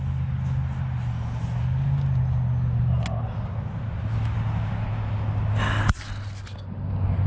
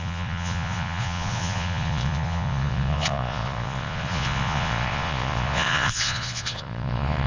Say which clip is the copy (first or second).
second